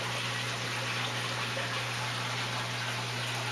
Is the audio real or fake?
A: real